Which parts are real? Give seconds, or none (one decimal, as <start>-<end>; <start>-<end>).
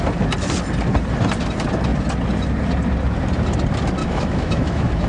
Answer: 0.0-4.0